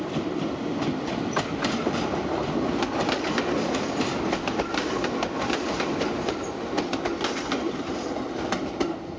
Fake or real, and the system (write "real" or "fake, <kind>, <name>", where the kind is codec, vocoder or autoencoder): real